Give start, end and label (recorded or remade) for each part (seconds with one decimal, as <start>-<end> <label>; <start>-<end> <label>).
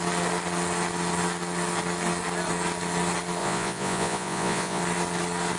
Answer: 0.0-3.4 recorded; 3.4-4.8 remade; 4.8-5.6 recorded